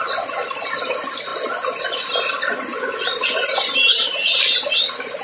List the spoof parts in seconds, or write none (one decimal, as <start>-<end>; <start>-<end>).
none